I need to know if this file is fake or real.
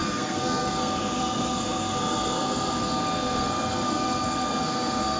fake